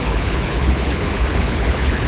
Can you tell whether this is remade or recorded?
remade